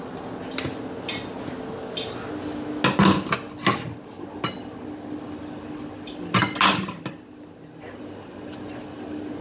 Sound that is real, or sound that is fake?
real